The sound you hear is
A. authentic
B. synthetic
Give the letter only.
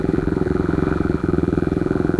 B